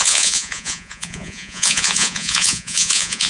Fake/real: fake